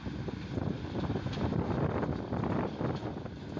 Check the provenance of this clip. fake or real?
real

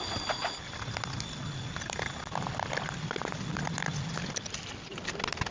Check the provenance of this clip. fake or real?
real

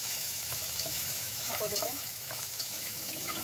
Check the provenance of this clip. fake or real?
fake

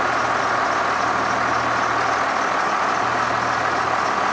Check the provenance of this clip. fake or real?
real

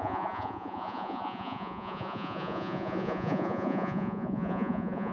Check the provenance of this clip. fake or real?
fake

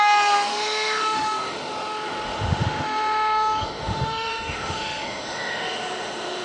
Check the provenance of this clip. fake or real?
fake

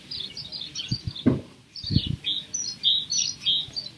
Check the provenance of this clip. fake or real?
real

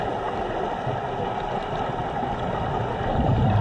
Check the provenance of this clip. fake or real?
real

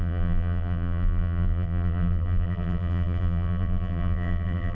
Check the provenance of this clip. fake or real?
fake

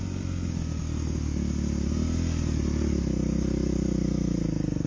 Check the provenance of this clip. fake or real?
real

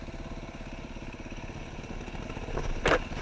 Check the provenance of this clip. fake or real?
real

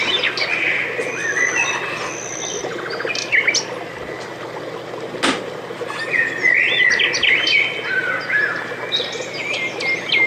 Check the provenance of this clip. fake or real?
real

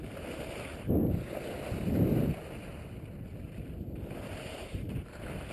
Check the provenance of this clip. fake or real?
real